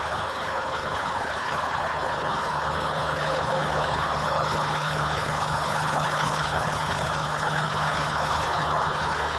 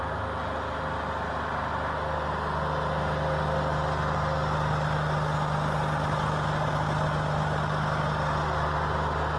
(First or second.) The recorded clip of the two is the second